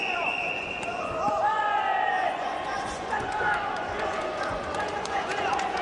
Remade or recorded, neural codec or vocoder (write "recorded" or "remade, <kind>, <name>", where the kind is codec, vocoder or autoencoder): remade, vocoder, Vocos